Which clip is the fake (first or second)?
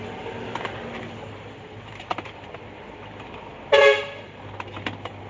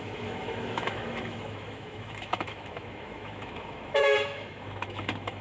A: second